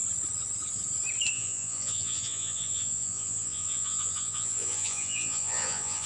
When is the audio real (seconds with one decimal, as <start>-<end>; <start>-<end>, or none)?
0.0-1.3